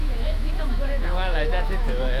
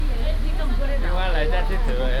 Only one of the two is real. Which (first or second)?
second